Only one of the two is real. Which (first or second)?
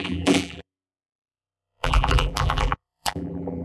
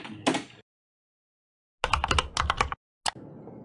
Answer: second